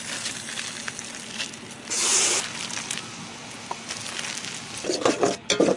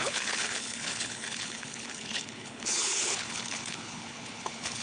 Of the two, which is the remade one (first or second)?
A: second